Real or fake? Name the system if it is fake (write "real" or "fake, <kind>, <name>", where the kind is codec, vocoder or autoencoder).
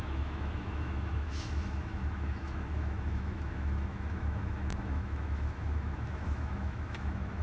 fake, autoencoder, DAC-VAE